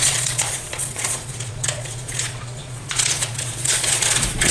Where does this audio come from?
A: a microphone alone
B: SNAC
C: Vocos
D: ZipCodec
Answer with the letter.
C